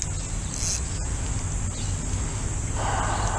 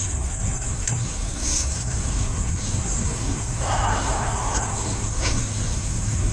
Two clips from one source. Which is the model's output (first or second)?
second